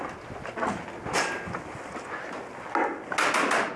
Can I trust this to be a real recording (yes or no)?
yes